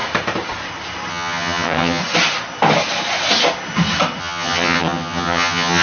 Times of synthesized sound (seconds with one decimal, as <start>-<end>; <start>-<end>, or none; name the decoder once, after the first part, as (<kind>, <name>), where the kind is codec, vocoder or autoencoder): 1.1-2.0 (vocoder, HiFi-GAN); 4.2-5.8